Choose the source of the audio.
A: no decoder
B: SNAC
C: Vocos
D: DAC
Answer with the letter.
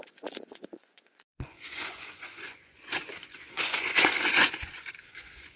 C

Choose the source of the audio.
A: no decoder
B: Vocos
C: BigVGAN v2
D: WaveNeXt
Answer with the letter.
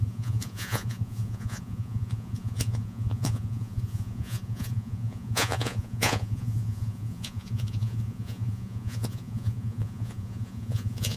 B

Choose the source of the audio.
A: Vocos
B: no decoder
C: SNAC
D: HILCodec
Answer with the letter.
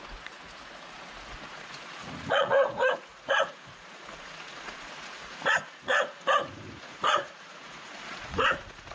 A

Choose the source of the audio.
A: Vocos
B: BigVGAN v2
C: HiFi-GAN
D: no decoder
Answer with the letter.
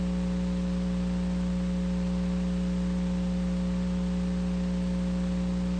D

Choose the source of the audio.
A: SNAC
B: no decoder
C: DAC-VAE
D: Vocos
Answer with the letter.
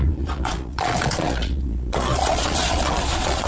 D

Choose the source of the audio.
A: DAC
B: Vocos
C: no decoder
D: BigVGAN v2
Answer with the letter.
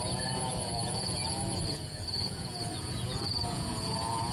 B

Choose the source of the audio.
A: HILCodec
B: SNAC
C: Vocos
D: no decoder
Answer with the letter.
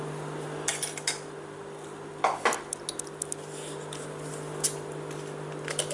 D